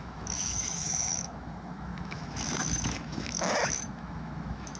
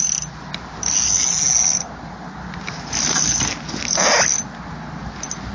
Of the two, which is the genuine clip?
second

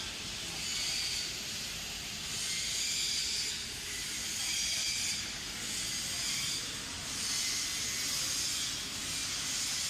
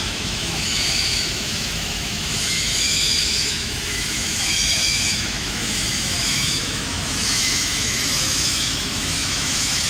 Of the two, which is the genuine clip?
first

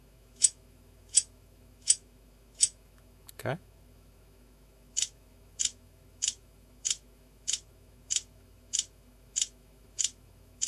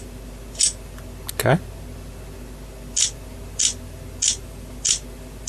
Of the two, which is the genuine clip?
second